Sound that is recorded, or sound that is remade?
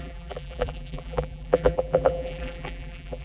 remade